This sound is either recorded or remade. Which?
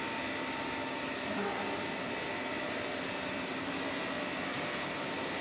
recorded